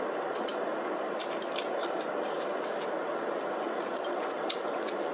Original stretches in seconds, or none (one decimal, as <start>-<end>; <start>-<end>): 0.0-5.1